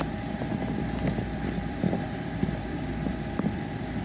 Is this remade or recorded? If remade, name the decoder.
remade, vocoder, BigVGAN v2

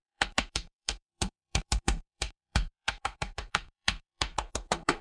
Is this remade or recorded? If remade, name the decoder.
remade, codec, SNAC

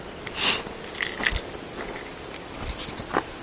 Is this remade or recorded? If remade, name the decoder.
recorded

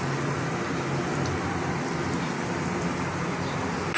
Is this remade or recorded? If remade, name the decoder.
recorded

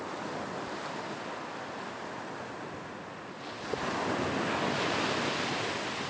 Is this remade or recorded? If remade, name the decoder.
recorded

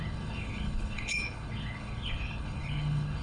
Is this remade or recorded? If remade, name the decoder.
remade, codec, HILCodec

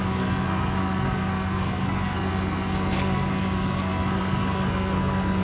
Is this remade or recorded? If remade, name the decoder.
remade, codec, SNAC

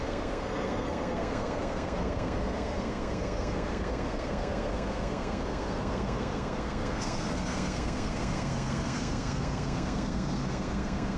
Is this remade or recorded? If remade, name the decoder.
remade, codec, SNAC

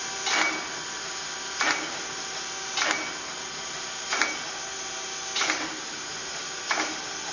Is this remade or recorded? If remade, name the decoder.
recorded